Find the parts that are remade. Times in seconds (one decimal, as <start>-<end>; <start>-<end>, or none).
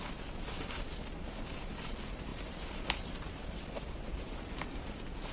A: none